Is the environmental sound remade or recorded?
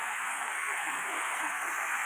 remade